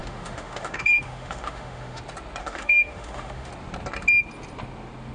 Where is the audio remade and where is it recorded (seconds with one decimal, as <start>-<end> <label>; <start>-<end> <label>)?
0.0-2.0 remade; 2.0-2.4 recorded; 2.4-3.5 remade; 3.5-5.1 recorded